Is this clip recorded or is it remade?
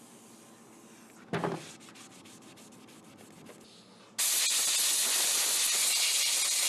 recorded